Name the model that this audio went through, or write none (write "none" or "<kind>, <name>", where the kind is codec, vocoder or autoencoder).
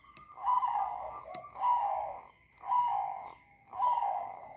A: codec, DAC